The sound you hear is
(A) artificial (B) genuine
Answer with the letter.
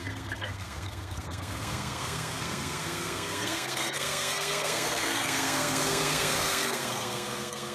A